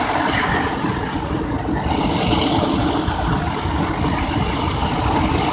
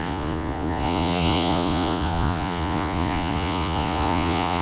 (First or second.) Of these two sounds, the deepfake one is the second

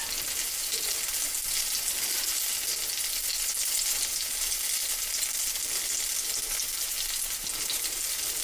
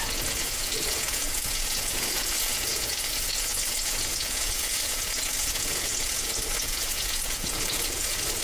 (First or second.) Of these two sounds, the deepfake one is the second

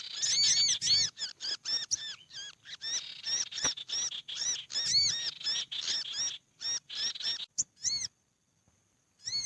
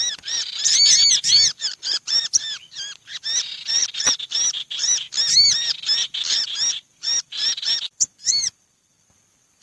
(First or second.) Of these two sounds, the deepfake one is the second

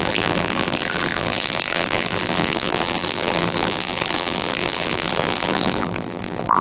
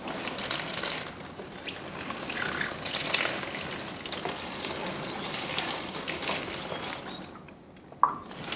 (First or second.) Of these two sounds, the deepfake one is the first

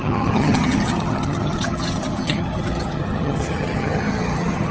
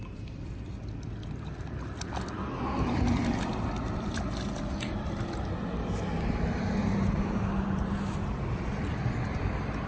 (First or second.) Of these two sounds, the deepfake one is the first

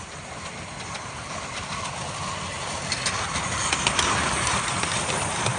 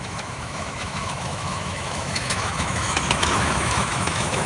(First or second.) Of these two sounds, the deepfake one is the second